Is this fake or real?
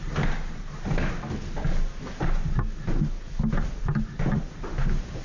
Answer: real